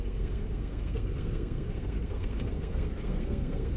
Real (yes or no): no